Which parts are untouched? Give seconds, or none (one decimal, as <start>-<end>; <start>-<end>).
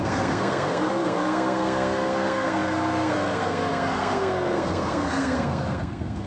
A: none